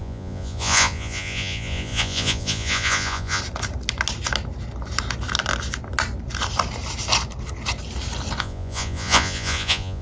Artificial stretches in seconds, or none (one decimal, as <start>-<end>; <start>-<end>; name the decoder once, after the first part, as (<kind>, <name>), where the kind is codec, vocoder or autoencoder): 0.0-3.4 (vocoder, Vocos); 8.4-10.0